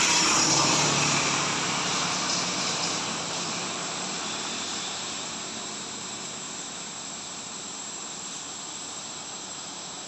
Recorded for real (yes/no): no